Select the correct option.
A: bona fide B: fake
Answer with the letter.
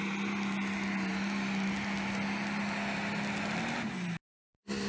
A